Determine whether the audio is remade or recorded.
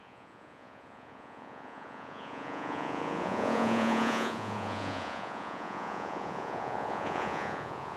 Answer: remade